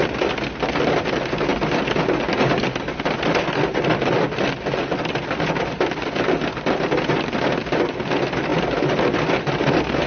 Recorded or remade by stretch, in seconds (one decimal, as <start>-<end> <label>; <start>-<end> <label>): 0.0-10.1 recorded